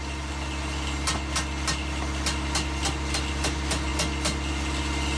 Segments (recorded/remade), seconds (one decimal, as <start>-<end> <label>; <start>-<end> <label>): 0.0-5.2 recorded